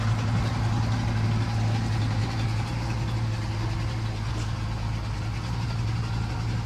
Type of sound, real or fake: real